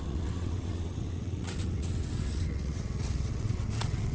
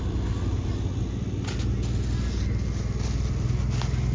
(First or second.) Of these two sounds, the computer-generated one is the first